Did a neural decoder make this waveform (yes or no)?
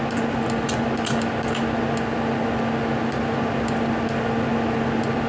no